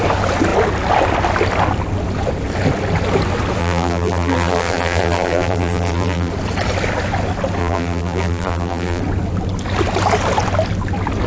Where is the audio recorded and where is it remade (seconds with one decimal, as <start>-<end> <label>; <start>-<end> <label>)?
0.0-3.6 recorded; 3.6-6.3 remade; 6.3-7.6 recorded; 7.6-9.0 remade; 9.0-11.3 recorded